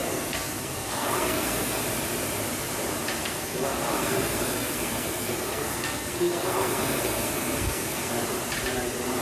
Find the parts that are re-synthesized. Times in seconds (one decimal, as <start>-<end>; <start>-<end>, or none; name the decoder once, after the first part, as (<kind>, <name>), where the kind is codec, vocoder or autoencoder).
0.0-1.8 (codec, SNAC); 3.2-8.1